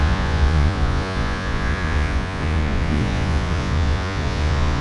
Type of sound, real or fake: fake